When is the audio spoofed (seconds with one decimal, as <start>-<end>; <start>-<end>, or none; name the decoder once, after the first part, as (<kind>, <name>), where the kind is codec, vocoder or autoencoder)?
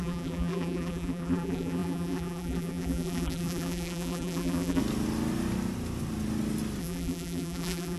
0.0-4.8 (vocoder, BigVGAN v2); 6.8-8.0